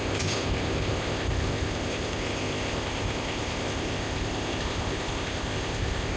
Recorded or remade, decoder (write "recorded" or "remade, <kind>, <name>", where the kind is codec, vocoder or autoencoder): remade, codec, ZipCodec